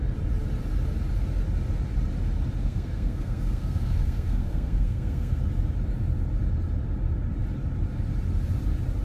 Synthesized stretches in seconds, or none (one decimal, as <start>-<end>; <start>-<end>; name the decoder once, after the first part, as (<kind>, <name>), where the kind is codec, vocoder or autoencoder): 2.6-5.4 (codec, SNAC)